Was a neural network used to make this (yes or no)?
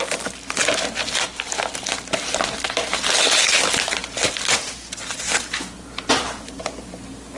no